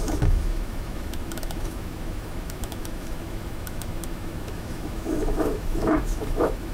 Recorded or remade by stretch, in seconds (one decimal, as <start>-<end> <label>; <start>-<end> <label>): 0.0-6.7 remade